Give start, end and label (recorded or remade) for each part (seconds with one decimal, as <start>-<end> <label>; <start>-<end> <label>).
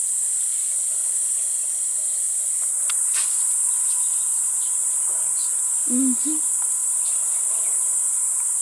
0.0-8.6 recorded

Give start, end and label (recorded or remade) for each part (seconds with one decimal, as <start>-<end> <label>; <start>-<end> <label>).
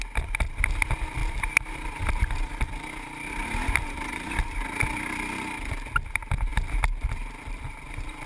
0.0-1.2 recorded; 1.2-5.1 remade; 5.1-8.3 recorded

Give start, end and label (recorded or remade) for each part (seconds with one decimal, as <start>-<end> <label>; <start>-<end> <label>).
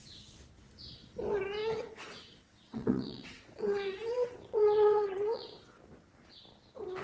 0.0-1.6 recorded; 1.6-5.8 remade; 5.8-7.0 recorded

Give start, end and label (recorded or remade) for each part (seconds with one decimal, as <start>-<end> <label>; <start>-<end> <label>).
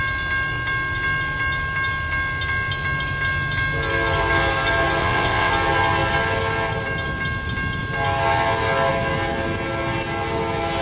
0.0-5.0 recorded; 5.0-5.5 remade; 5.5-10.8 recorded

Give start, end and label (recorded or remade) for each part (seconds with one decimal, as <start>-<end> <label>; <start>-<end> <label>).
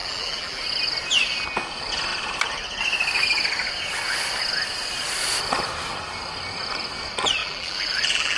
0.0-0.6 remade; 0.6-7.4 recorded; 7.4-8.4 remade